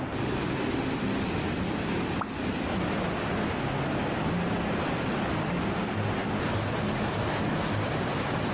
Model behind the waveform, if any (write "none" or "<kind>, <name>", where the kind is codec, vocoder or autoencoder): none